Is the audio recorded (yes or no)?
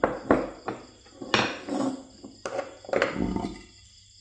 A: yes